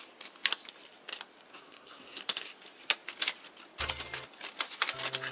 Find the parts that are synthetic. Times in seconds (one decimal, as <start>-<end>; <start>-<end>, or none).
1.5-2.2